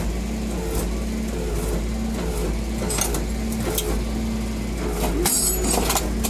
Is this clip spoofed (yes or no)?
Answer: no